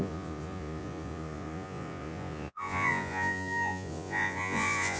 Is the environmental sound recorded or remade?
remade